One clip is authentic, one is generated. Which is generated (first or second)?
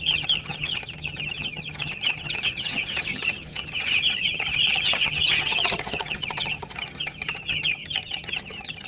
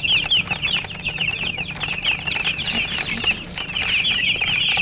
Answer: first